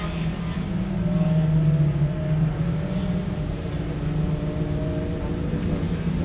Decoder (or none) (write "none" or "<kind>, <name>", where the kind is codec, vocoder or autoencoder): none